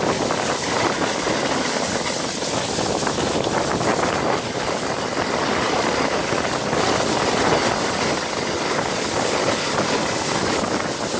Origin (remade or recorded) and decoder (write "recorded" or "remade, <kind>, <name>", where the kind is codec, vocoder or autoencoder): recorded